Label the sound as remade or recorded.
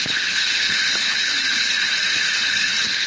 remade